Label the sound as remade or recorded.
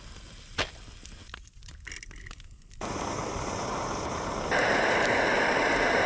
recorded